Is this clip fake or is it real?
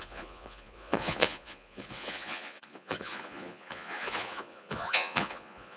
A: fake